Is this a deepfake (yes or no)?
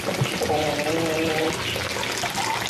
no